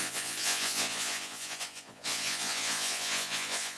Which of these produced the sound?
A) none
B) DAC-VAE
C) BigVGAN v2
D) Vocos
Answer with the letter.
D